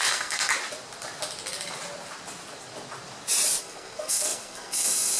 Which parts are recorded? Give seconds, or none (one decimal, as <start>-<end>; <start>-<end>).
0.5-3.6

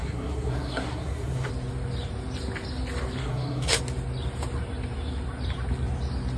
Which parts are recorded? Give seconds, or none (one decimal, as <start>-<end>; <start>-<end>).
1.5-3.2; 3.8-6.4